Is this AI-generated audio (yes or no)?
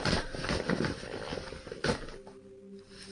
no